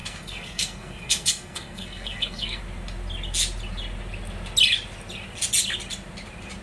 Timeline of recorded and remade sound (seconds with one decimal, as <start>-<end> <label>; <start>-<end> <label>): 0.0-2.6 remade; 2.6-6.6 recorded